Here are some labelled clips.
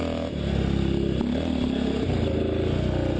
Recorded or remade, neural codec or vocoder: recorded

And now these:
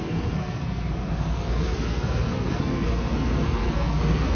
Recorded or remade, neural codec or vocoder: remade, codec, SNAC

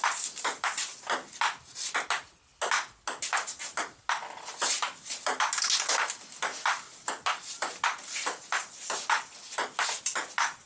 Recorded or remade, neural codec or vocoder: recorded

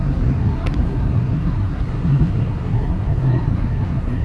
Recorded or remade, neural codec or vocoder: remade, codec, SNAC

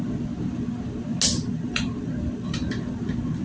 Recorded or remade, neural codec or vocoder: recorded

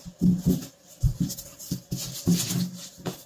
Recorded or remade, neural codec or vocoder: recorded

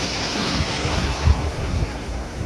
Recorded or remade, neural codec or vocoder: remade, codec, SNAC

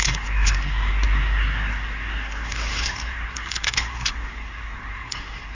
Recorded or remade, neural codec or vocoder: remade, codec, SNAC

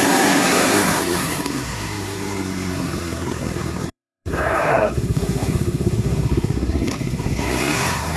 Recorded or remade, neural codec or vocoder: remade, codec, SNAC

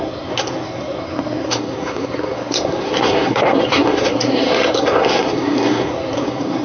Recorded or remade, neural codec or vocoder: remade, codec, SNAC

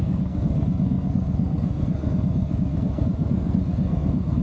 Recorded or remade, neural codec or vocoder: remade, codec, SNAC